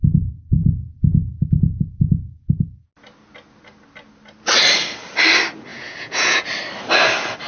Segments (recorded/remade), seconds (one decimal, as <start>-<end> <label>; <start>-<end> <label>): 0.0-0.6 recorded; 0.6-2.9 remade; 2.9-5.7 recorded; 5.7-6.5 remade; 6.5-7.5 recorded